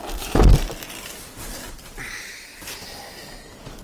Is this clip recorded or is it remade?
recorded